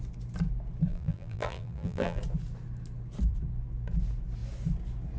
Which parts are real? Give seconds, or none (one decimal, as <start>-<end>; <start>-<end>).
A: 0.0-0.9; 2.2-5.2